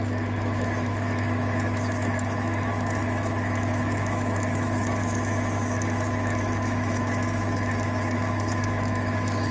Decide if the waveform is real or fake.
fake